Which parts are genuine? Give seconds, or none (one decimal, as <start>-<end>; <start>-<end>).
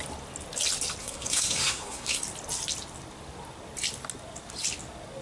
0.0-1.0; 2.2-5.2